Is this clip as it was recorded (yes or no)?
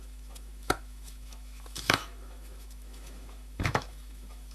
no